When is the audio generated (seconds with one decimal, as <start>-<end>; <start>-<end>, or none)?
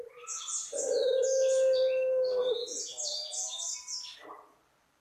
2.4-3.6